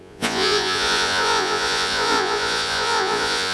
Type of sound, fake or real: fake